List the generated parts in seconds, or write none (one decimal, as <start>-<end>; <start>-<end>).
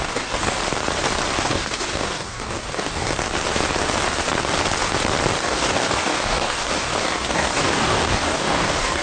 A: 0.0-0.6; 1.4-3.1; 5.4-9.0